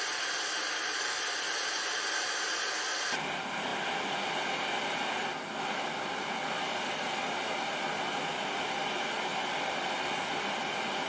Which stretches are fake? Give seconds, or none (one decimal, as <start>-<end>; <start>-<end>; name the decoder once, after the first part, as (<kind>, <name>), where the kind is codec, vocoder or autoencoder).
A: none